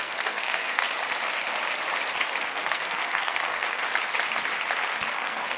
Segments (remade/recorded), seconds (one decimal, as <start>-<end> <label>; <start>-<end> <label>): 0.0-0.8 remade; 0.8-2.4 recorded; 2.4-3.8 remade; 3.8-5.1 recorded; 5.1-5.6 remade